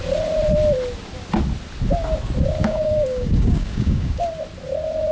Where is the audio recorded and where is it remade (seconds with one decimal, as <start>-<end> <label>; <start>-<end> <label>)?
0.0-2.6 recorded; 2.6-4.2 remade; 4.2-5.1 recorded